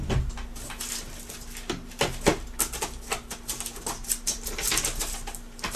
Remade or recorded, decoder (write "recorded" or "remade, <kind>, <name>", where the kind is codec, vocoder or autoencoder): recorded